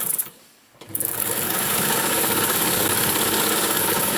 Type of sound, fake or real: fake